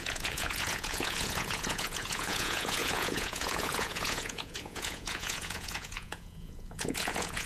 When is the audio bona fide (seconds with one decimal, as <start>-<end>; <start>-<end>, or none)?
none